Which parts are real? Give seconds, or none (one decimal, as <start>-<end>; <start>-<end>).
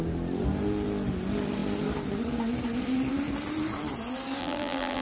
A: 0.0-4.4